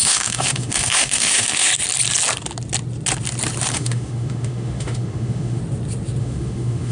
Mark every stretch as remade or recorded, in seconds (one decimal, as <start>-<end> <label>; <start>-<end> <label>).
0.0-1.7 remade; 1.7-3.7 recorded; 3.7-5.6 remade; 5.6-6.2 recorded; 6.2-6.9 remade